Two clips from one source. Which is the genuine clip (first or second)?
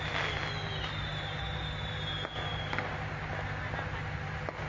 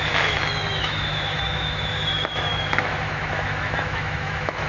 first